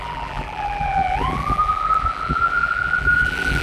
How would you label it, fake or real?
fake